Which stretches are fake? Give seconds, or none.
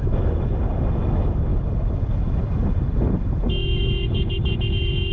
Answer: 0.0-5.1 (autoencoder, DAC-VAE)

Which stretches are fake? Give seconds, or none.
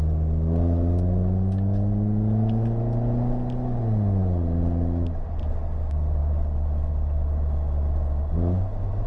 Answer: none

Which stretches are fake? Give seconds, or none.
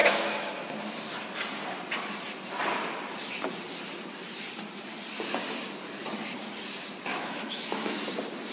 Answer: 0.0-0.6 (autoencoder, DAC-VAE); 7.1-8.0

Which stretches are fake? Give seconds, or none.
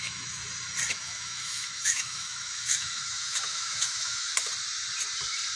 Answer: 0.0-0.4 (autoencoder, DAC-VAE); 0.9-4.4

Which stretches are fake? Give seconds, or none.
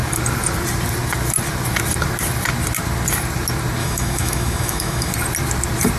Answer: 3.8-5.1 (autoencoder, DAC-VAE)